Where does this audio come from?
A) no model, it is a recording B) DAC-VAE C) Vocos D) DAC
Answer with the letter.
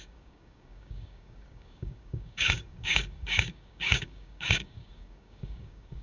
D